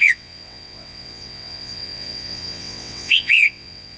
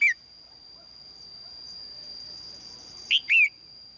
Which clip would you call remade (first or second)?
first